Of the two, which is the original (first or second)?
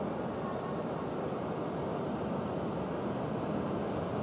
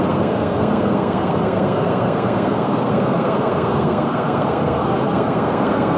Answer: first